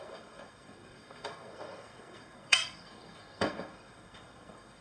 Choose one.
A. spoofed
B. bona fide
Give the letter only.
A